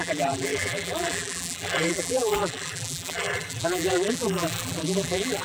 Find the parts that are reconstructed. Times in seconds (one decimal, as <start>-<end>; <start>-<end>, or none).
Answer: 0.0-5.4